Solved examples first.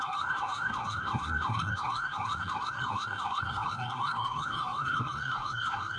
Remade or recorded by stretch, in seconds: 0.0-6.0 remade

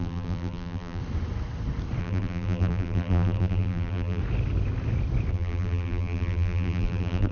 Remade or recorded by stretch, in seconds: 0.0-1.0 remade; 1.0-2.0 recorded; 2.0-4.2 remade; 4.2-5.3 recorded; 5.3-7.3 remade

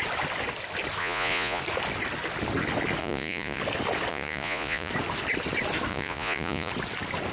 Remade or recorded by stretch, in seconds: 0.0-1.0 recorded; 1.0-1.6 remade; 1.6-3.0 recorded; 3.0-3.6 remade; 3.6-4.1 recorded; 4.1-4.9 remade; 4.9-5.9 recorded; 5.9-6.7 remade; 6.7-7.3 recorded

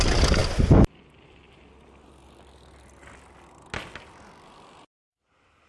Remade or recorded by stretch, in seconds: 0.0-5.7 recorded

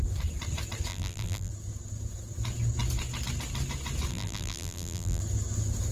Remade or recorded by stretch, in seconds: 0.0-0.9 recorded; 0.9-1.5 remade; 1.5-4.1 recorded; 4.1-5.2 remade; 5.2-5.9 recorded

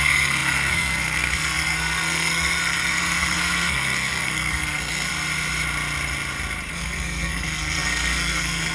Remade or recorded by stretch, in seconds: 0.0-5.1 remade; 5.1-6.7 recorded; 6.7-8.7 remade

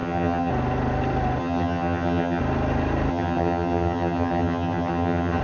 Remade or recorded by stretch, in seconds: 0.0-0.5 remade; 0.5-1.4 recorded; 1.4-2.4 remade; 2.4-3.1 recorded; 3.1-5.4 remade